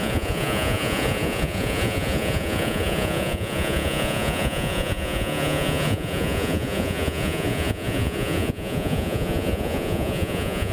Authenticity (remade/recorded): remade